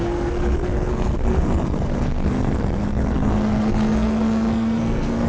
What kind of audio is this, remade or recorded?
remade